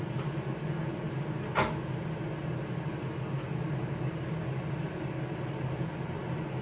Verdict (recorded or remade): recorded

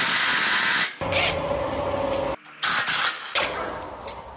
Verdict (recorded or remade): recorded